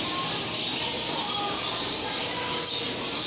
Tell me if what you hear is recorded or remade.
recorded